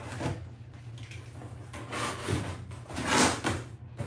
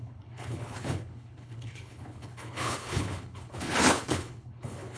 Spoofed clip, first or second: second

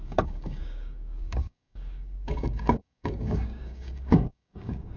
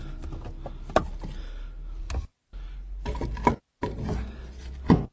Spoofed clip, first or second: first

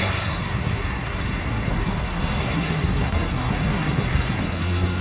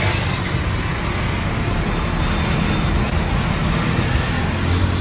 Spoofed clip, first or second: first